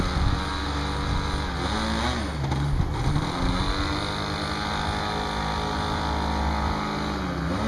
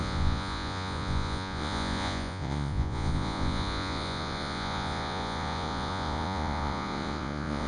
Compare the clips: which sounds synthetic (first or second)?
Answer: second